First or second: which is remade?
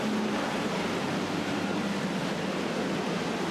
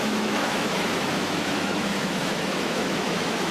second